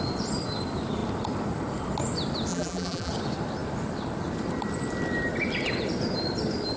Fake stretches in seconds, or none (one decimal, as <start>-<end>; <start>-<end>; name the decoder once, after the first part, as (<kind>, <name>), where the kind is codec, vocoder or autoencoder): 2.5-3.1 (vocoder, BigVGAN v2)